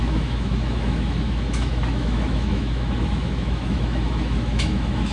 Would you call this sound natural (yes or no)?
no